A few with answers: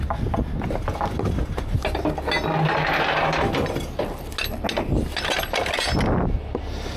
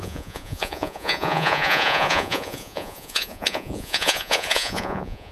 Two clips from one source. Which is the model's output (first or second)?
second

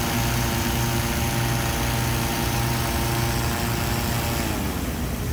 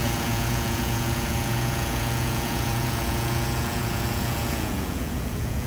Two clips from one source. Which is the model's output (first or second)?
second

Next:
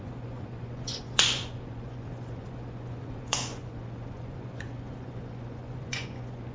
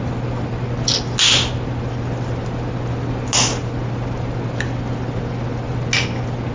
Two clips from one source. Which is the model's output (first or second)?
first